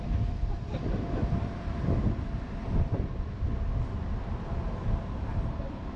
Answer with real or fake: fake